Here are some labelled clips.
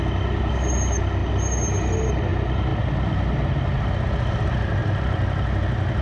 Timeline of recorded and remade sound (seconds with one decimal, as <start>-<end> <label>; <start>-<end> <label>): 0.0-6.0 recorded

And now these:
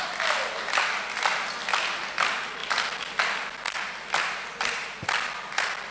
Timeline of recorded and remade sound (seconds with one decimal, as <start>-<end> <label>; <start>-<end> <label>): 0.0-5.9 recorded

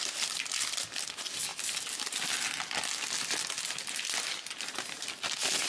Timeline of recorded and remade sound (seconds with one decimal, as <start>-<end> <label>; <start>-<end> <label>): 0.0-5.7 recorded